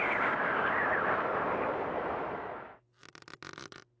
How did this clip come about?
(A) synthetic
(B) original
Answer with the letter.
B